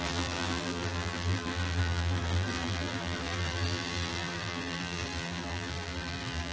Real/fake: fake